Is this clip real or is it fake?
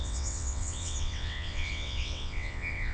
fake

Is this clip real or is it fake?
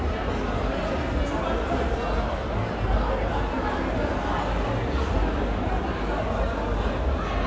real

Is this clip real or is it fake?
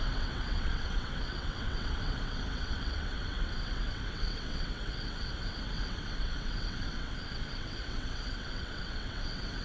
fake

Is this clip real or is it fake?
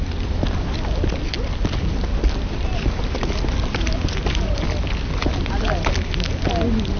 real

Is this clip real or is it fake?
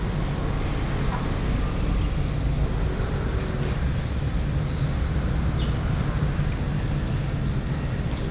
real